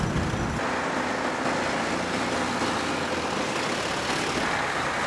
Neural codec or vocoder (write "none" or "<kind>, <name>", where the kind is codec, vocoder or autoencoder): none